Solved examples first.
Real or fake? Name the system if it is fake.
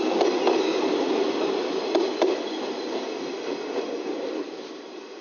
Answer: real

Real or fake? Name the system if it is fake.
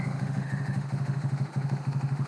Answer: fake, autoencoder, DAC-VAE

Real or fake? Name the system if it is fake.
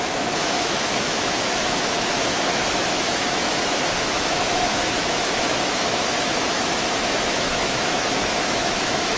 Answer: fake, autoencoder, DAC-VAE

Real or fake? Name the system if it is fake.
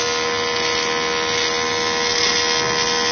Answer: real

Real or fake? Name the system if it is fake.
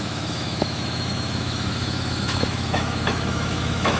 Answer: fake, autoencoder, DAC-VAE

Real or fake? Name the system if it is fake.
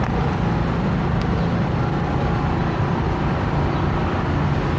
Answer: real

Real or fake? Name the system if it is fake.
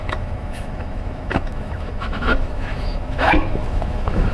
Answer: fake, autoencoder, DAC-VAE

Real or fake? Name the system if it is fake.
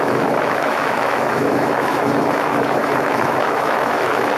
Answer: fake, autoencoder, DAC-VAE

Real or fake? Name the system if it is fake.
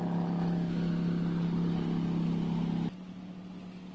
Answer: real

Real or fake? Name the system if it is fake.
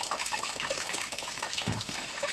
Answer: fake, autoencoder, DAC-VAE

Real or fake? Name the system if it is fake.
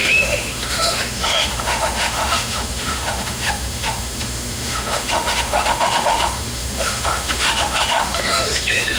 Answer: fake, autoencoder, DAC-VAE